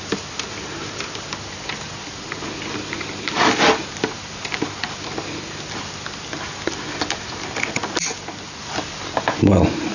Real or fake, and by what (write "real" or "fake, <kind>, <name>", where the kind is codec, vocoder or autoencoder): real